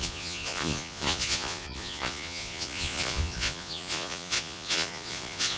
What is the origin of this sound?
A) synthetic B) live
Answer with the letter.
A